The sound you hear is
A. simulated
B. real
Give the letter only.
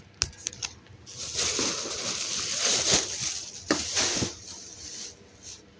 B